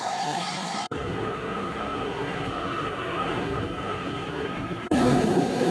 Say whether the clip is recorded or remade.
remade